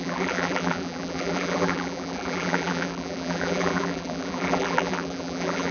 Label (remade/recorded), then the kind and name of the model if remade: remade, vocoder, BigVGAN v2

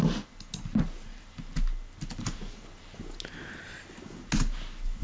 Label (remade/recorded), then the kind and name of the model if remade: recorded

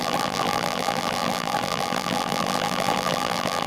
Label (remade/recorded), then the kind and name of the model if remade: remade, vocoder, BigVGAN v2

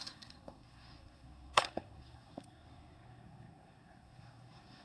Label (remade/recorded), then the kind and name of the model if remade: remade, codec, SNAC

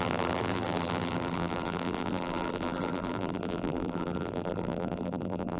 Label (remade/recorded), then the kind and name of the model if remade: remade, vocoder, BigVGAN v2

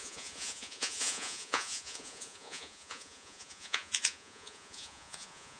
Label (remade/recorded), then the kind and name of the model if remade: remade, vocoder, Vocos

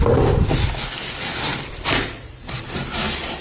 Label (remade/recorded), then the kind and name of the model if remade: recorded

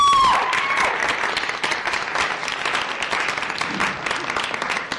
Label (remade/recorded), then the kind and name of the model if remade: recorded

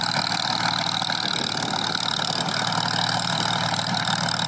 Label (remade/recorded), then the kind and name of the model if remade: remade, vocoder, BigVGAN v2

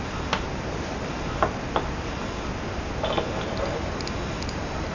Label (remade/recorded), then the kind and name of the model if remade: recorded